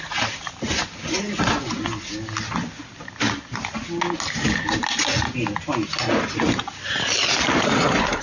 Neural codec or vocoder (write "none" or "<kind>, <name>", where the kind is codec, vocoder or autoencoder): none